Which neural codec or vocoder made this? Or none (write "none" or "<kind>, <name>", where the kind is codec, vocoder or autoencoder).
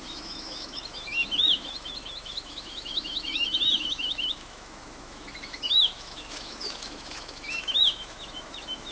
autoencoder, DAC-VAE